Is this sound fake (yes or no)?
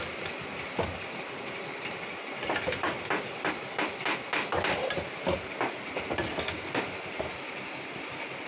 no